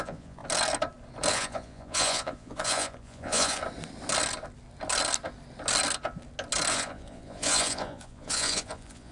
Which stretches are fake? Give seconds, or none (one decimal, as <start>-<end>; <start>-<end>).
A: 0.0-0.4; 1.3-3.6; 6.7-9.1